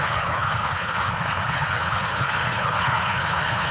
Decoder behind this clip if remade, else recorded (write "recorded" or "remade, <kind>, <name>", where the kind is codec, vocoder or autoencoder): remade, codec, HILCodec